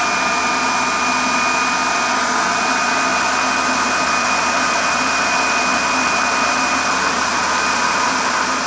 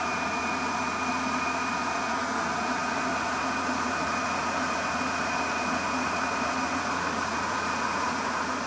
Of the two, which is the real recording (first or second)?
first